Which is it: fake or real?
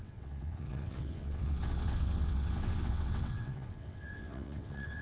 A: fake